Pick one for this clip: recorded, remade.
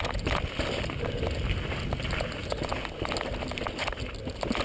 recorded